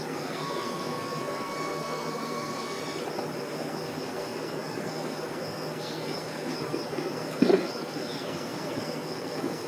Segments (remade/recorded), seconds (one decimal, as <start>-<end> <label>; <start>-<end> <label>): 0.0-2.8 remade; 2.8-3.4 recorded; 3.4-9.7 remade